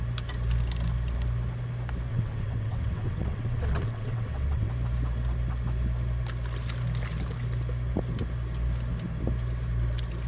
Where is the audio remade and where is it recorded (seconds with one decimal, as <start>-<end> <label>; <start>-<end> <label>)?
0.0-2.1 recorded; 2.1-4.7 remade; 4.7-10.3 recorded